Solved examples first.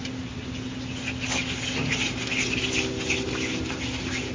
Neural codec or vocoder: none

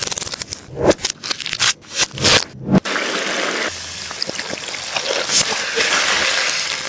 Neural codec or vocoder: none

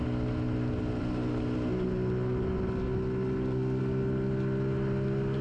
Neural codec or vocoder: none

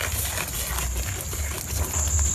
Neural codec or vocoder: none